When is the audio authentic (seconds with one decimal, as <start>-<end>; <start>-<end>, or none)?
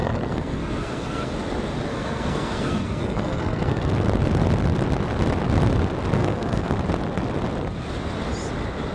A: 1.3-1.9; 3.9-6.2; 6.7-8.9